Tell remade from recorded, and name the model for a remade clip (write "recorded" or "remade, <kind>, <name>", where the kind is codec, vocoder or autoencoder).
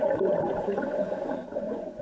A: remade, vocoder, Vocos